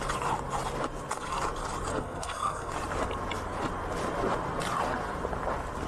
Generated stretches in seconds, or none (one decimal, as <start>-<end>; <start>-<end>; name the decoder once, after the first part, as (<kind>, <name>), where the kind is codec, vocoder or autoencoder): 1.9-2.7 (codec, SNAC)